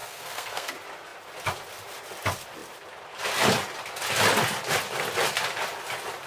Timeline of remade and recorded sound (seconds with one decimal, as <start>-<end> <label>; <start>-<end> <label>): 0.0-0.7 remade; 0.7-6.3 recorded

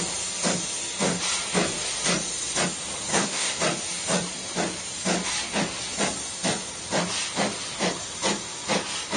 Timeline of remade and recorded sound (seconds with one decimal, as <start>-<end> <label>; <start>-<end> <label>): 0.0-3.1 recorded; 3.1-3.6 remade; 3.6-9.2 recorded

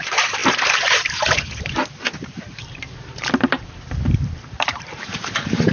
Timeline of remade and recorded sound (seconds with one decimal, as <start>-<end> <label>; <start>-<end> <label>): 0.0-0.4 remade; 0.4-2.2 recorded; 2.2-5.7 remade